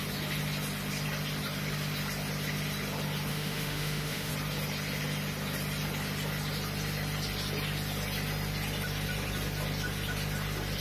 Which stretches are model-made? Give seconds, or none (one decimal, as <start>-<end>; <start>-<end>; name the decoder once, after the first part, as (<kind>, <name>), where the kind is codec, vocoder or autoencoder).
3.3-4.3 (autoencoder, DAC-VAE)